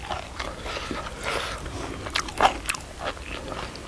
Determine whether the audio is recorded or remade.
recorded